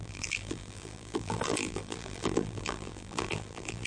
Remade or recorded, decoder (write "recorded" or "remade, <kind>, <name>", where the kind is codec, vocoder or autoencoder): remade, vocoder, BigVGAN v2